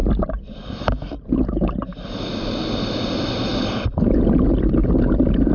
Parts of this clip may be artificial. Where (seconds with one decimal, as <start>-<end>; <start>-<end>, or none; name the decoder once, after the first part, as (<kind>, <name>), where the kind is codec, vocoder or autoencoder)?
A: 4.8-5.5 (vocoder, BigVGAN v2)